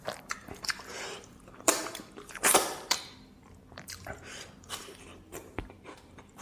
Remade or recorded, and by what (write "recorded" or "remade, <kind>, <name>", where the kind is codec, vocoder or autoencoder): remade, vocoder, BigVGAN v2